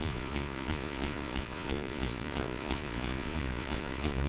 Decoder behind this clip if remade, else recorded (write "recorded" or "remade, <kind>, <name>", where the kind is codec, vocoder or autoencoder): remade, vocoder, Vocos